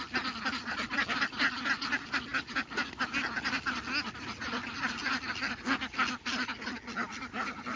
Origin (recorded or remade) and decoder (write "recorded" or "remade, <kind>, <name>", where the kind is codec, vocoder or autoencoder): recorded